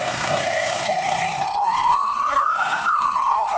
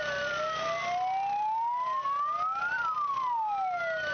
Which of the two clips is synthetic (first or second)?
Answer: first